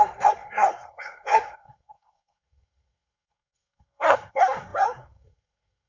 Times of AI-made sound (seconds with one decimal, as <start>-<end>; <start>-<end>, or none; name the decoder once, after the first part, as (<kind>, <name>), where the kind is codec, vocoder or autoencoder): 0.0-5.9 (codec, SNAC)